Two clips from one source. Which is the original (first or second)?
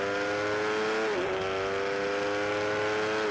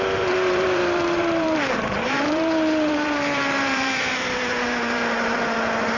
first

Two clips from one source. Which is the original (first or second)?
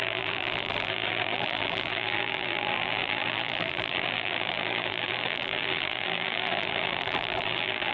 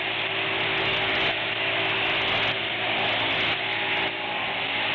second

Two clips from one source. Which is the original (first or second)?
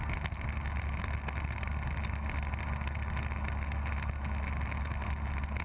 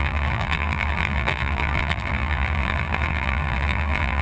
first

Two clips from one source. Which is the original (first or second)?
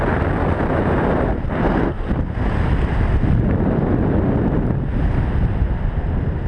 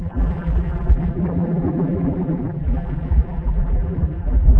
first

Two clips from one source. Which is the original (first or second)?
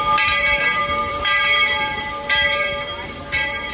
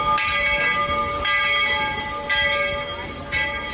second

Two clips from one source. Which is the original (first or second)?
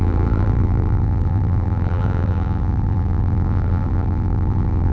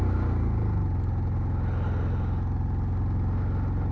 second